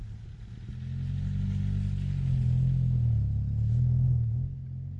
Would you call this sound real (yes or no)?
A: yes